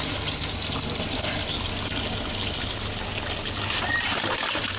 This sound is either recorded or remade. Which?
recorded